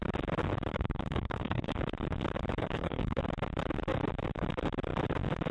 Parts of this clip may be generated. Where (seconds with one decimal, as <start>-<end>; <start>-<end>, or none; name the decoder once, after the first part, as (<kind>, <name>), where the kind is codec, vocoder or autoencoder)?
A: 0.7-1.7 (codec, DAC); 2.6-3.2